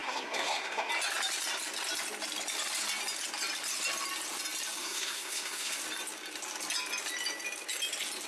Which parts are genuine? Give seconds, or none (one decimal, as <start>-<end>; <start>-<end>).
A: 0.9-4.8; 5.8-8.3